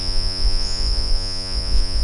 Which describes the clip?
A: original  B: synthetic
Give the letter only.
B